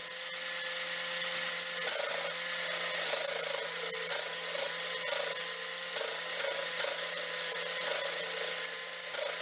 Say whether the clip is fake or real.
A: real